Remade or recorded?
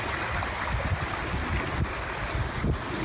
recorded